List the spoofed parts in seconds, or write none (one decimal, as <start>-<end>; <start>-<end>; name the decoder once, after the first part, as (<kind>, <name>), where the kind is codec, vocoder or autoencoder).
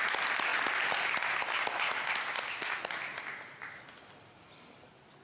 none